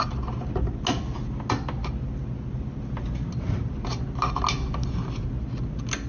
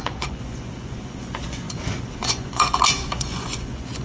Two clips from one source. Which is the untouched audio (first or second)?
first